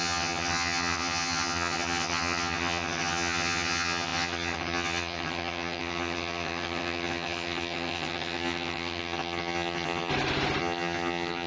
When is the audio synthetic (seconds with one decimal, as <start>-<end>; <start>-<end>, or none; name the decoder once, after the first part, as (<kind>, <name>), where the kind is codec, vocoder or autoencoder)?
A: 0.0-10.1 (vocoder, HiFi-GAN); 10.6-11.5